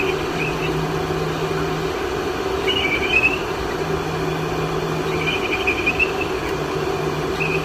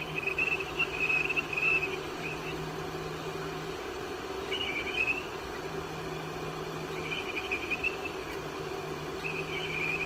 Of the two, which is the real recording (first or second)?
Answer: first